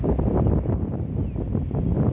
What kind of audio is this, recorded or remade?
recorded